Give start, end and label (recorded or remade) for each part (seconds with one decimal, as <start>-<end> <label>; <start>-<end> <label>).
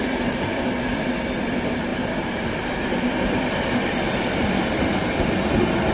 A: 0.0-5.9 remade